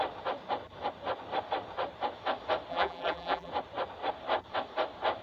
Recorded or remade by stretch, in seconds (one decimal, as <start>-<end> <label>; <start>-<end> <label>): 0.0-2.7 recorded; 2.7-3.5 remade; 3.5-5.2 recorded